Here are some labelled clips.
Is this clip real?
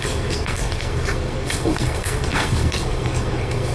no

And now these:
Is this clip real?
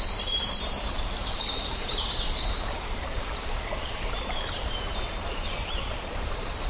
no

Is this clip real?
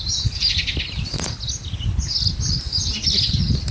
yes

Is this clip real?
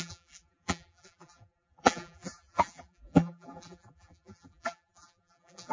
no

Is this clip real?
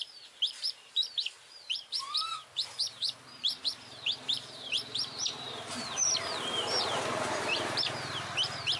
no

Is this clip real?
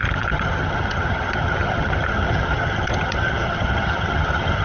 no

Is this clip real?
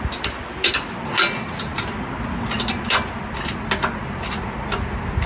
yes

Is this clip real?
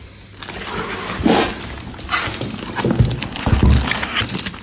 yes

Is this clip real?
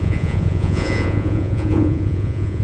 no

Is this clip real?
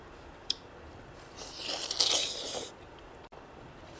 yes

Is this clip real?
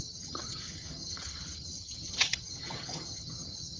no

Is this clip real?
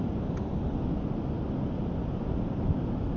yes